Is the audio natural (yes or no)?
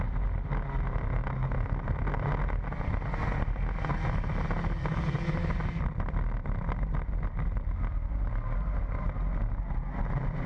yes